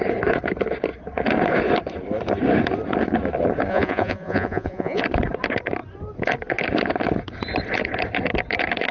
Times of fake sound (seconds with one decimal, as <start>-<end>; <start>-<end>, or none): 3.7-5.0